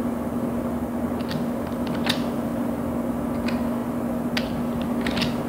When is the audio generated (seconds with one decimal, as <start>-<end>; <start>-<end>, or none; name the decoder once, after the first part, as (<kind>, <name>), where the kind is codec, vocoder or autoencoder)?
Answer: none